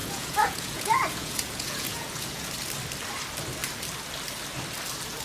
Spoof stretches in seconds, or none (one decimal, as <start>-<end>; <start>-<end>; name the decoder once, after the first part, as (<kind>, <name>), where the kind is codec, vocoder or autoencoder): 0.0-2.5 (vocoder, Vocos)